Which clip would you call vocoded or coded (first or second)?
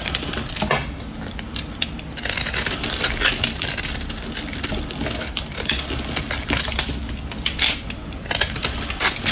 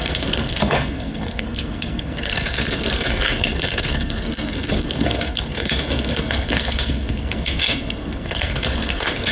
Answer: second